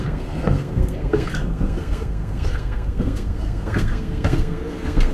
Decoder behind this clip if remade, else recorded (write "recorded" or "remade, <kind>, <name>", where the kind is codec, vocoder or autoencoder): remade, codec, SNAC